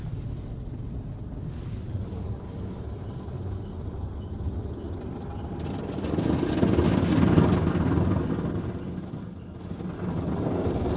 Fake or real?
real